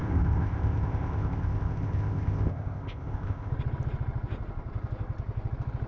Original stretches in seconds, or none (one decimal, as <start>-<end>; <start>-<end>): 3.5-5.9